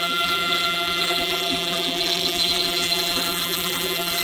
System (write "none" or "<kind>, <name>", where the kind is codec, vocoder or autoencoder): vocoder, BigVGAN v2